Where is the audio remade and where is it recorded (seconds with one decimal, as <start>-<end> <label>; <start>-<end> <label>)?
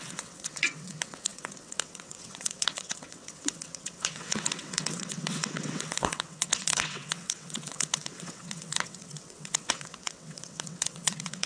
0.0-11.5 remade